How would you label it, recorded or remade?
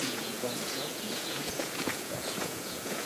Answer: remade